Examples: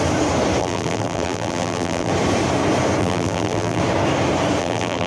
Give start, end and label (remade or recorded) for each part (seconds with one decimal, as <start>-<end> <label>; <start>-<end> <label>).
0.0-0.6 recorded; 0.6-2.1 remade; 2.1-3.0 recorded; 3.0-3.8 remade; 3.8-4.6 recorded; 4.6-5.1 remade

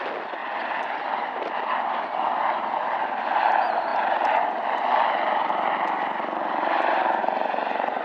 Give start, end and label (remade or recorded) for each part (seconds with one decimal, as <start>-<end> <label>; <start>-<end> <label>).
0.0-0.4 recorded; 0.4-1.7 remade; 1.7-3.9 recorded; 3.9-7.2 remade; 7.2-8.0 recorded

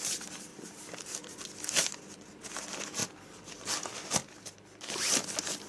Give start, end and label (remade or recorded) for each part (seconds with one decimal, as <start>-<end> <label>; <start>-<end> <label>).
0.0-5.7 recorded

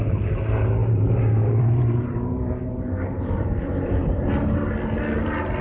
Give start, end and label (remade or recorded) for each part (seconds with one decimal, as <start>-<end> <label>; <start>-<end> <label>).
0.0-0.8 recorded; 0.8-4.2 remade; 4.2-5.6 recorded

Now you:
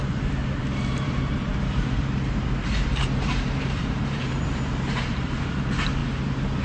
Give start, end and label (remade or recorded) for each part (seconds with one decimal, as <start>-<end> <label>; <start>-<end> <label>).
0.0-6.6 remade